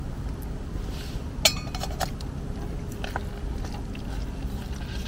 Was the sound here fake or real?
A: real